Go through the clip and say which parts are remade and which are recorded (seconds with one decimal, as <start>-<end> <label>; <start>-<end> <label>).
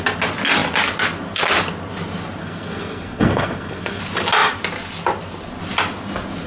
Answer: 0.0-2.4 recorded; 2.4-4.0 remade; 4.0-6.5 recorded